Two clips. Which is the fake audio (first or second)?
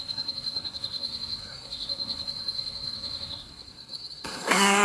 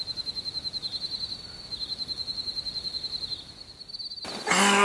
first